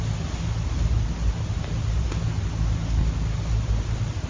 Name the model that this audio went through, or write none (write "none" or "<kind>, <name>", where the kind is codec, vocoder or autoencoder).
none